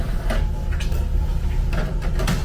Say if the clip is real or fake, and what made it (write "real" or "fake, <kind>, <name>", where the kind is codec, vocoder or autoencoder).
real